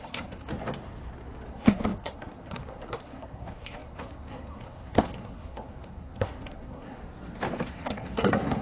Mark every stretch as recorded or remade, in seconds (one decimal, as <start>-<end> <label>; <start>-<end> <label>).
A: 0.0-0.5 remade; 0.5-1.5 recorded; 1.5-7.0 remade; 7.0-7.7 recorded; 7.7-8.6 remade